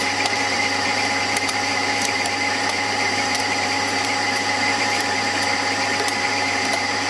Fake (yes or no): yes